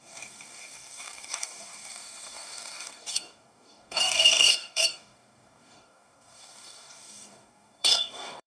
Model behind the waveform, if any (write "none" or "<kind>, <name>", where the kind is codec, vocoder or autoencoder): codec, DAC